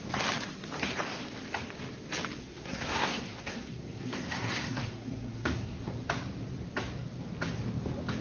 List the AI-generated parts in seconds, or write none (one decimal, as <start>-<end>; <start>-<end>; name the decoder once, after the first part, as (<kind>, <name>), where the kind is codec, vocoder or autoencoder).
2.4-5.9 (codec, SNAC)